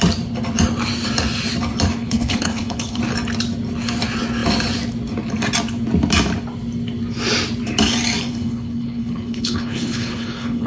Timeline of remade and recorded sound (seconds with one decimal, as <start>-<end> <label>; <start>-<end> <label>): 0.0-2.0 recorded; 2.0-3.0 remade; 3.0-8.3 recorded; 8.3-10.7 remade